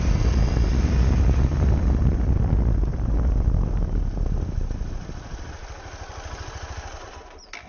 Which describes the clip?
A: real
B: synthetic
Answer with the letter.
B